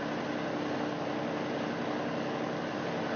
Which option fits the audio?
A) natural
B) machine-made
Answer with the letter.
A